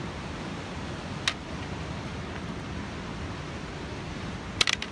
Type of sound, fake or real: real